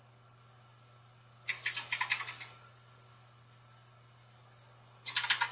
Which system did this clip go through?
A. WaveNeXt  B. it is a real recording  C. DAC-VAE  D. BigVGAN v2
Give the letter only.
B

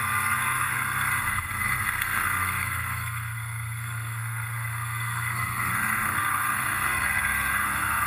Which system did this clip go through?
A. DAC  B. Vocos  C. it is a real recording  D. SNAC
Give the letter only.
D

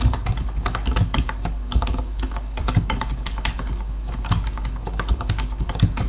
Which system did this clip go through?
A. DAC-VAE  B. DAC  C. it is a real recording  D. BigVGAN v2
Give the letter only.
B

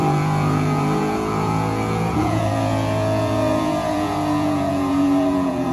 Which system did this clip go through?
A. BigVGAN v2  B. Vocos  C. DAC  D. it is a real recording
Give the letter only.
B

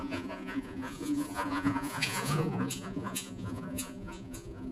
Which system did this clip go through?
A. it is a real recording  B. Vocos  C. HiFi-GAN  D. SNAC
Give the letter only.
B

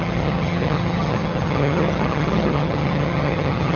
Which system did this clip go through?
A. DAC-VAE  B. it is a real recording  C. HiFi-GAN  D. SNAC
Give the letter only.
C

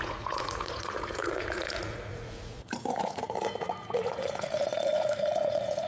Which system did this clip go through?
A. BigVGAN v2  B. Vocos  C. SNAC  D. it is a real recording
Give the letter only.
B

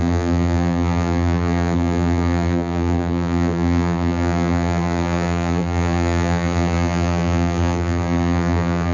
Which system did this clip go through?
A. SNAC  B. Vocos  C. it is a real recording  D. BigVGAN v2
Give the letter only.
D